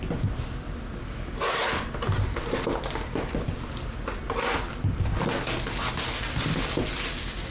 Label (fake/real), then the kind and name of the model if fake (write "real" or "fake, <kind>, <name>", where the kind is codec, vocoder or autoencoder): real